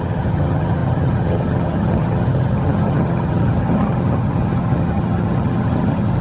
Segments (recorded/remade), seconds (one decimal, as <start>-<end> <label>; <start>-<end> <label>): 0.0-6.2 remade

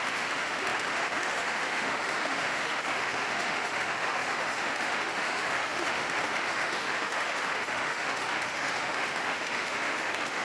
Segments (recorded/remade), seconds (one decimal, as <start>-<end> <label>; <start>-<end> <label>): 0.0-10.4 remade

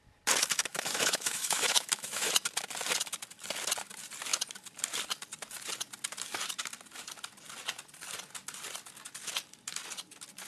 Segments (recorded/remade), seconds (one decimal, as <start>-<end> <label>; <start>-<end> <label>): 0.0-0.7 recorded; 0.7-2.3 remade; 2.3-10.5 recorded

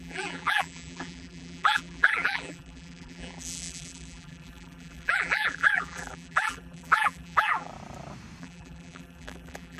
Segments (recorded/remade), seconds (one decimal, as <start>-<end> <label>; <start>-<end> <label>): 0.0-7.7 remade; 7.7-8.4 recorded; 8.4-9.8 remade

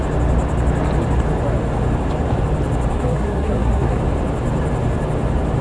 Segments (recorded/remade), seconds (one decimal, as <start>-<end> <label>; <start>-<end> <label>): 0.0-2.9 recorded; 2.9-4.0 remade; 4.0-5.6 recorded

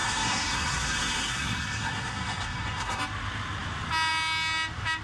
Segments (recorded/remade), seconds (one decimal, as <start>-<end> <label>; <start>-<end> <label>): 0.0-3.0 remade; 3.0-5.0 recorded

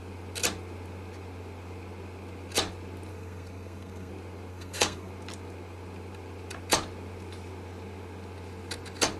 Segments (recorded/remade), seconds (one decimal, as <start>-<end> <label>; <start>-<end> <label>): 0.0-3.1 recorded; 3.1-4.1 remade; 4.1-4.5 recorded; 4.5-5.1 remade; 5.1-9.2 recorded

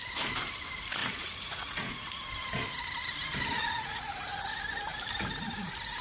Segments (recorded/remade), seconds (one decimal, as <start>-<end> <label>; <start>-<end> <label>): 0.0-1.0 recorded; 1.0-2.1 remade; 2.1-3.6 recorded; 3.6-4.5 remade; 4.5-6.0 recorded